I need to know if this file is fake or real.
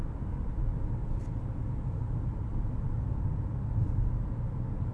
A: real